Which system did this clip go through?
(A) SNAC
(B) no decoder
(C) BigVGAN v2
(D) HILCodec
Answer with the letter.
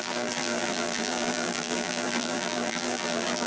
C